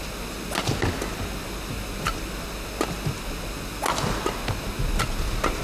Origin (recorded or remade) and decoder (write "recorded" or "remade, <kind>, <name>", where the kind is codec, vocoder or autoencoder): recorded